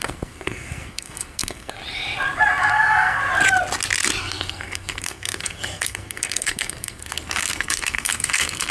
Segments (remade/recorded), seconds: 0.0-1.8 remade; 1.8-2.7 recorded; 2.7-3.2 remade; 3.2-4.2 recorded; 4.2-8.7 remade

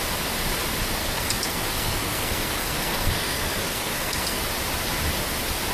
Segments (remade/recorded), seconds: 0.0-1.0 recorded; 1.0-4.4 remade; 4.4-5.7 recorded

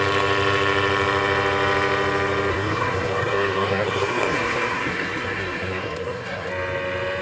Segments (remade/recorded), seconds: 0.0-2.5 recorded; 2.5-6.5 remade; 6.5-7.2 recorded

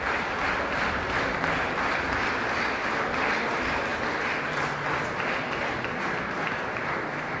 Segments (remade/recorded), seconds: 0.0-7.4 recorded

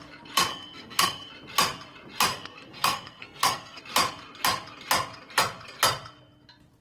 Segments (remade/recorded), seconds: 0.0-0.5 recorded; 0.5-1.3 remade; 1.3-2.3 recorded; 2.3-3.8 remade; 3.8-6.8 recorded